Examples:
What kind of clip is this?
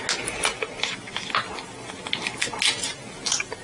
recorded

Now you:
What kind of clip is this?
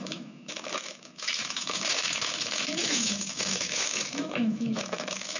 remade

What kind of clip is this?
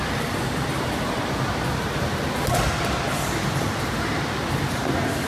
recorded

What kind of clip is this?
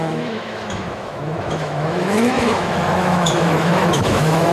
remade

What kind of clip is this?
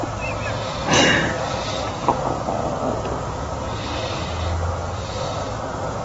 recorded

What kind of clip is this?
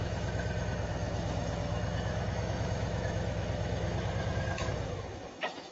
remade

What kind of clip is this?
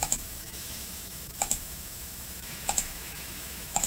remade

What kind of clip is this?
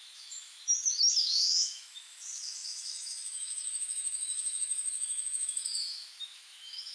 remade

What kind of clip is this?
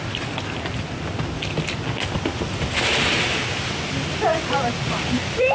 recorded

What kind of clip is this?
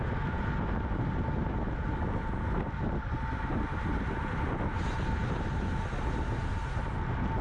recorded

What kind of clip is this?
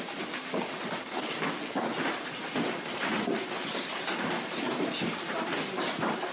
recorded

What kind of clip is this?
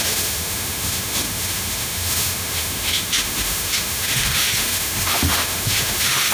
remade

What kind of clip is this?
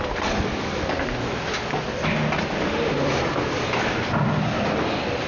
recorded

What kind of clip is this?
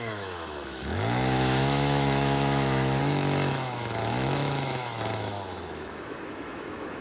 remade